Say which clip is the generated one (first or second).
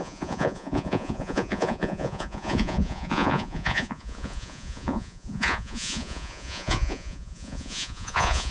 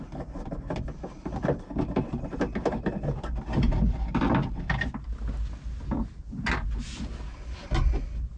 first